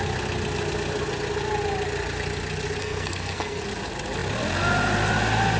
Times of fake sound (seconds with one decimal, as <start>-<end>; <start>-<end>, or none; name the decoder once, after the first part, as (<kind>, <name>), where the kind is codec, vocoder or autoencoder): 2.8-3.6 (codec, SNAC)